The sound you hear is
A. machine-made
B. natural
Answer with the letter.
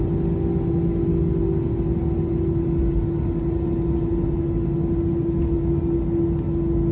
B